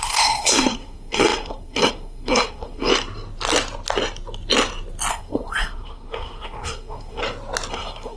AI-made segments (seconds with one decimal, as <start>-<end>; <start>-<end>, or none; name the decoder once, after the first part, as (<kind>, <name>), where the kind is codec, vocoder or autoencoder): 0.0-2.9 (codec, SNAC); 5.1-7.2; 7.7-8.2